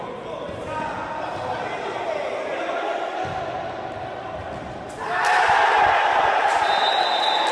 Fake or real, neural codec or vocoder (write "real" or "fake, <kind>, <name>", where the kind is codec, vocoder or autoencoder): real